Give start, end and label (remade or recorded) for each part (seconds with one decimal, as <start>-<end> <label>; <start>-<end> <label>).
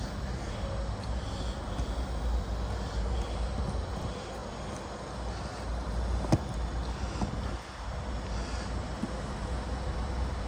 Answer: 0.0-10.5 recorded